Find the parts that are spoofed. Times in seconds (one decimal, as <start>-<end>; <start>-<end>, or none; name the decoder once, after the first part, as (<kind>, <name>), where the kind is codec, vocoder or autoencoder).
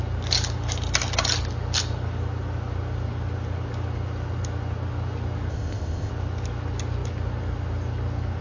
5.5-6.1 (codec, ZipCodec)